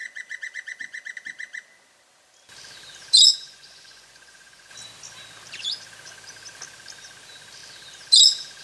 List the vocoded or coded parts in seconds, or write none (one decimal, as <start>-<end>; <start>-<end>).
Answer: 0.0-1.0; 3.3-4.7